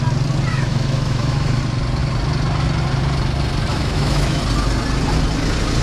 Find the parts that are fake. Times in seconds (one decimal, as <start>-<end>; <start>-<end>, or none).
0.5-1.6; 3.7-4.4